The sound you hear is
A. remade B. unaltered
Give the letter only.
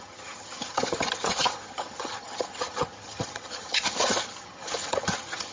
A